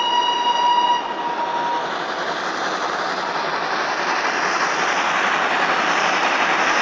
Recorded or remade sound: recorded